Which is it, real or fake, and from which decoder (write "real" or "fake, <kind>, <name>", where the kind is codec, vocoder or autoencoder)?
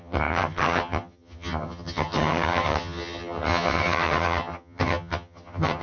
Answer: fake, vocoder, HiFi-GAN